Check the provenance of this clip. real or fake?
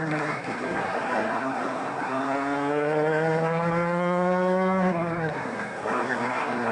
fake